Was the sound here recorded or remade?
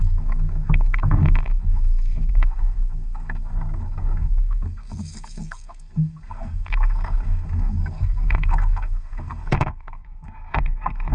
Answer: remade